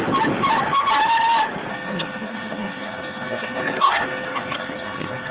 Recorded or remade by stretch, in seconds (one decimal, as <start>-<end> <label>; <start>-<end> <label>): 0.0-1.7 recorded; 1.7-5.3 remade